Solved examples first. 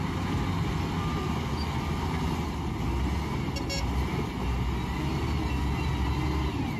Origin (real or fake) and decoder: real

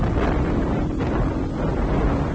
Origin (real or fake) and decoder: real